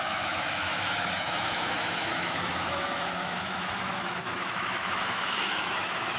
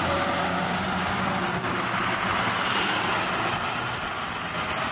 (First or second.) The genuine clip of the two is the second